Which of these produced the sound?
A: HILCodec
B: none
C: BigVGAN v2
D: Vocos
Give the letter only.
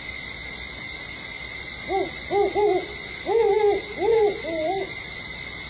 B